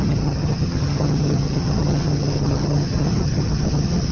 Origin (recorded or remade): remade